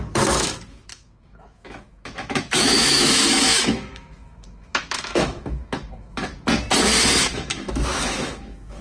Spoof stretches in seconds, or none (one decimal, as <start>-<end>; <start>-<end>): 0.0-6.3; 7.2-8.8